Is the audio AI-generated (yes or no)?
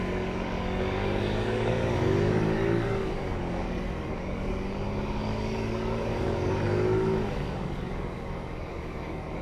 yes